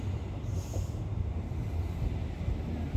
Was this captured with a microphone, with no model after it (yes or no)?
yes